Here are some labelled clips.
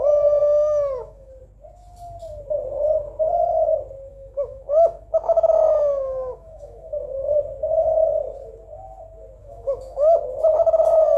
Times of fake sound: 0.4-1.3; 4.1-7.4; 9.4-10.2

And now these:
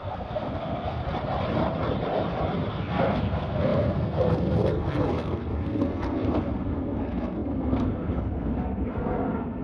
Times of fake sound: 0.0-1.0; 2.7-9.6

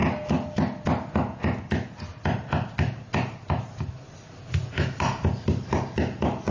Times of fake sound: none

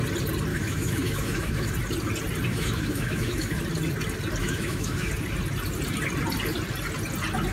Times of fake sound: 0.5-1.7; 2.5-3.6; 4.4-5.1

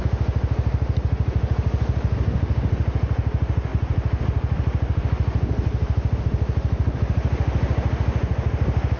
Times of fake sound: none

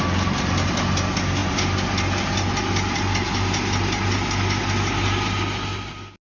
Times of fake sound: none

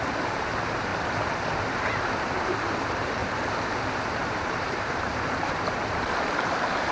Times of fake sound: 0.0-0.9; 1.9-6.9

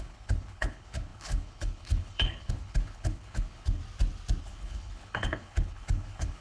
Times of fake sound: 0.0-3.8; 4.4-6.4